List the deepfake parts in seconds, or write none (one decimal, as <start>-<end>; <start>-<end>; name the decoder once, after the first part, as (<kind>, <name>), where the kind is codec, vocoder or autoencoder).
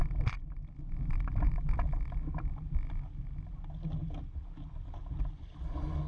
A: none